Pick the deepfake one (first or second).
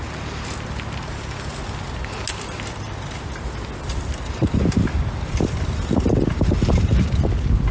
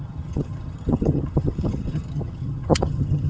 second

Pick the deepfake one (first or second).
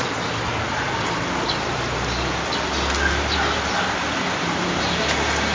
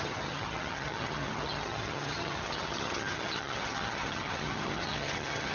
second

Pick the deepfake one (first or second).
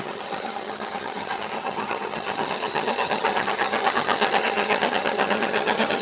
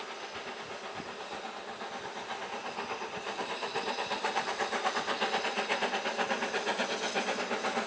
first